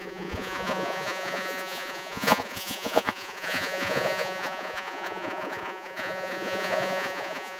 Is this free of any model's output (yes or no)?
no